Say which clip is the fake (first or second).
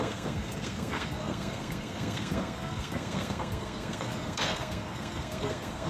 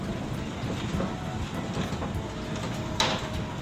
first